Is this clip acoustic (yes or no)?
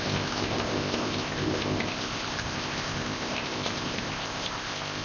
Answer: no